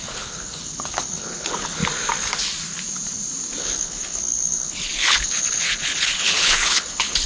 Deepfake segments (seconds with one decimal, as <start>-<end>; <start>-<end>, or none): 0.0-1.8; 3.6-7.3